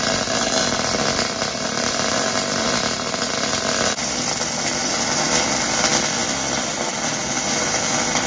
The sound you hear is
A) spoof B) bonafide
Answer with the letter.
B